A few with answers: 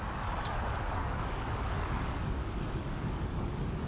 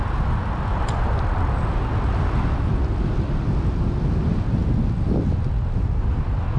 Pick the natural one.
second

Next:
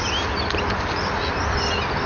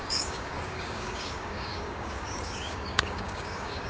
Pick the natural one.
first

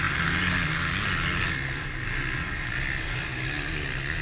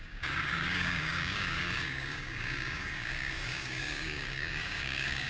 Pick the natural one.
first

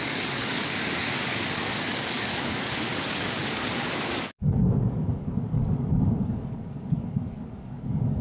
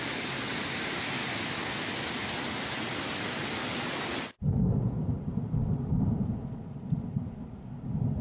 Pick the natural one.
second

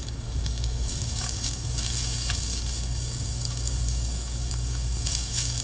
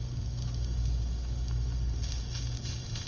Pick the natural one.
second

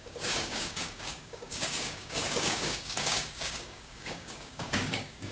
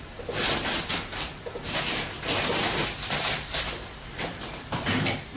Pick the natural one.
second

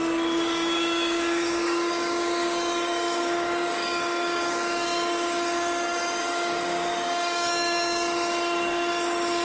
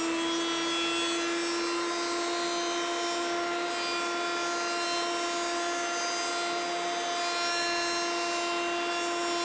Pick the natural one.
second